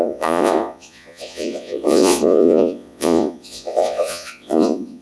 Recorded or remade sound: remade